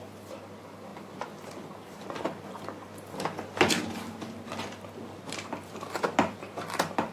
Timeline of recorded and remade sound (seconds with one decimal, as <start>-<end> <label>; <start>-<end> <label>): 0.0-7.1 recorded